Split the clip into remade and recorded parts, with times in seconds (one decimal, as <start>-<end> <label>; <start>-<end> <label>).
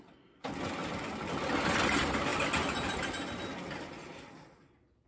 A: 0.0-2.3 recorded; 2.3-3.1 remade; 3.1-5.1 recorded